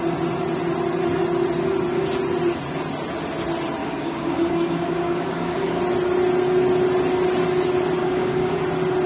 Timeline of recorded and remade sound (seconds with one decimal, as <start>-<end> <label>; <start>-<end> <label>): 0.0-3.8 recorded; 3.8-5.8 remade; 5.8-8.0 recorded; 8.0-8.6 remade; 8.6-9.1 recorded